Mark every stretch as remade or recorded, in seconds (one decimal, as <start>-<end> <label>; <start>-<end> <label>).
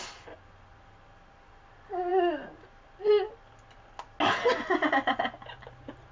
0.0-6.1 recorded